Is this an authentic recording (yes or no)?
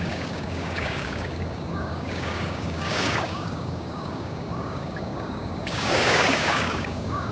no